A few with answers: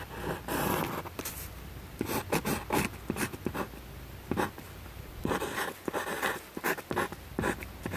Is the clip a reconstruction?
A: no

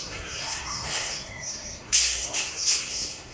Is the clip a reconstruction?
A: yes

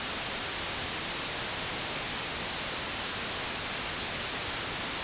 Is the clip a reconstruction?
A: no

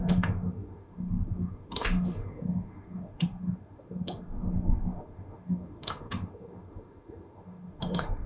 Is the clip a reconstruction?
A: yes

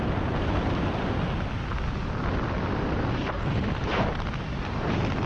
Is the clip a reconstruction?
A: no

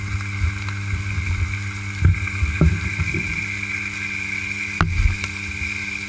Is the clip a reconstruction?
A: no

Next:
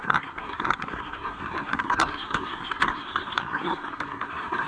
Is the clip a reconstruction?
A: yes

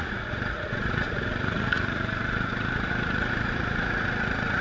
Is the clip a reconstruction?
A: yes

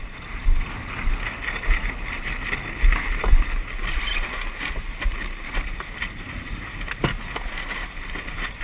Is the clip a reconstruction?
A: no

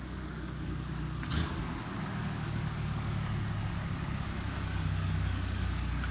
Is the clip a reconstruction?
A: yes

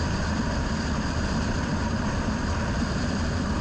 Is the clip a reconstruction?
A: yes